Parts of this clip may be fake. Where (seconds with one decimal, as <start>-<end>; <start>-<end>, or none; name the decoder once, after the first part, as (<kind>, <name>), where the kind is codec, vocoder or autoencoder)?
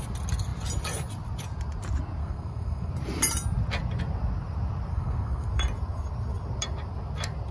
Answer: 2.2-2.9 (codec, SNAC); 4.9-5.5